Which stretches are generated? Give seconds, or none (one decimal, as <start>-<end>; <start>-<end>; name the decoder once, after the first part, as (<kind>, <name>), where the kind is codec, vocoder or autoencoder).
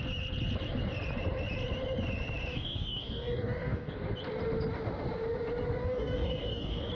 2.5-3.9 (codec, DAC); 5.8-6.9